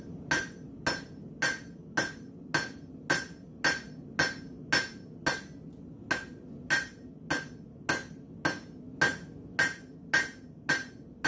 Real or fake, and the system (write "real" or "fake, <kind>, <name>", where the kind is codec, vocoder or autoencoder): real